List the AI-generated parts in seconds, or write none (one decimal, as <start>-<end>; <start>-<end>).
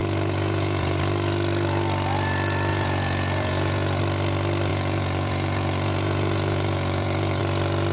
0.0-1.0; 2.7-4.0; 4.7-7.4